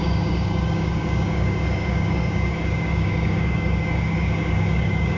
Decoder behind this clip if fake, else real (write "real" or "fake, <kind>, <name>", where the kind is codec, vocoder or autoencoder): fake, codec, DAC